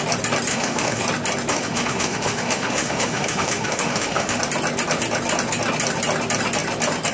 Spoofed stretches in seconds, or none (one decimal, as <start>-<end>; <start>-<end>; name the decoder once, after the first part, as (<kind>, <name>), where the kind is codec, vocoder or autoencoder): 0.5-1.0 (autoencoder, DAC-VAE); 1.5-4.4